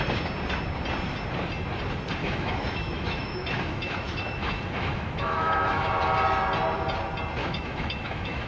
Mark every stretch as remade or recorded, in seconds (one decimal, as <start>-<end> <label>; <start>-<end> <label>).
0.0-2.2 recorded; 2.2-5.9 remade; 5.9-7.4 recorded; 7.4-8.5 remade